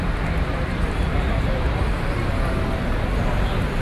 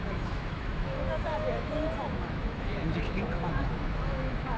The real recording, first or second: first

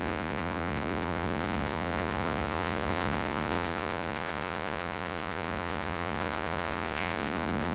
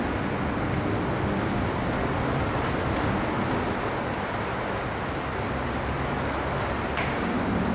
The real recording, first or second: second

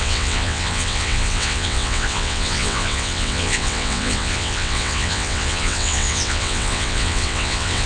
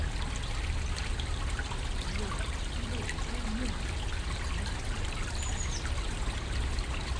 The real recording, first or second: second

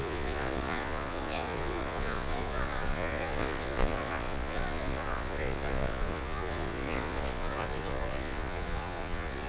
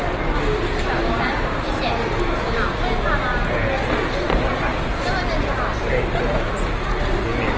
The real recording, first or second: second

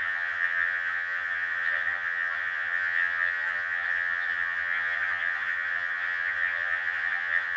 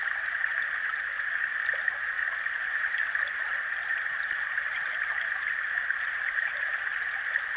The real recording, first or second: second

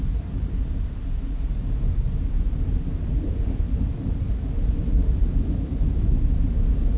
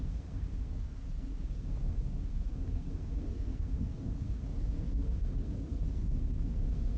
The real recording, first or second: first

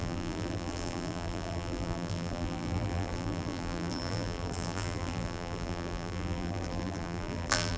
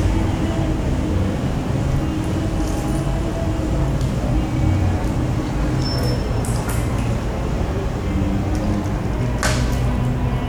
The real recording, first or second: second